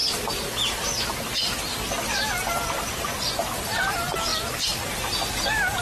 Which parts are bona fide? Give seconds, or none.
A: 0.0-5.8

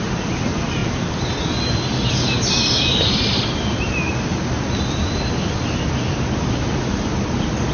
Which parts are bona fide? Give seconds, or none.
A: 0.0-7.7

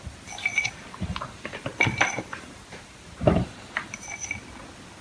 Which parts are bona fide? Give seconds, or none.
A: 0.0-0.5; 3.5-5.0

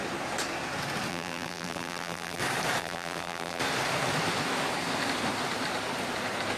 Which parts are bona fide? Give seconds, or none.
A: 0.0-1.1; 2.4-2.8; 3.6-6.6

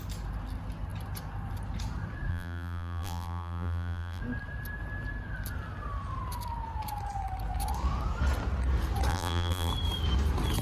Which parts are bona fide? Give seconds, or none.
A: 0.0-2.3; 4.2-9.1; 9.7-10.6

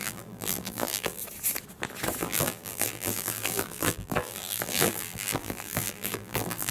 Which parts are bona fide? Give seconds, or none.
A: 1.2-2.2

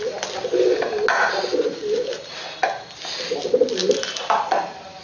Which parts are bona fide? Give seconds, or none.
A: 0.0-3.8